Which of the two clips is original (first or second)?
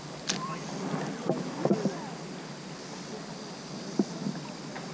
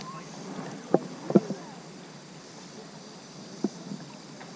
first